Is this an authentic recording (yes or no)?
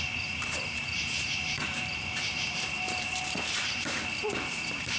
no